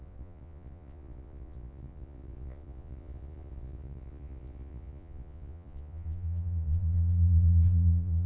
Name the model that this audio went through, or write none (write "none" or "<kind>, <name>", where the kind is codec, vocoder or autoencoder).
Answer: vocoder, Vocos